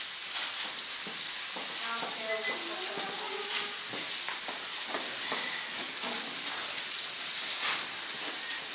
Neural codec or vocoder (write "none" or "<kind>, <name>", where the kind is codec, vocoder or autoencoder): none